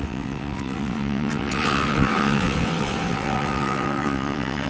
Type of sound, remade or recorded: remade